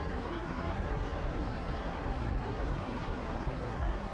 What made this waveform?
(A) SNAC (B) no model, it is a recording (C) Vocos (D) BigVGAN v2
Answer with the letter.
A